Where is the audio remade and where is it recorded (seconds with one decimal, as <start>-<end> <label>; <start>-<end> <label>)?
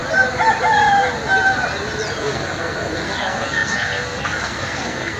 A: 0.0-2.2 recorded; 2.2-5.2 remade